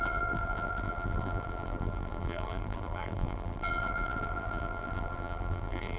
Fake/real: fake